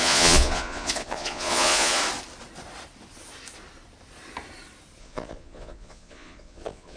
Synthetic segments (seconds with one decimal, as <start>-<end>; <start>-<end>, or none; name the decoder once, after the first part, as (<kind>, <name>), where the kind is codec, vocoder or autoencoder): 0.0-2.0 (vocoder, Vocos); 5.0-7.0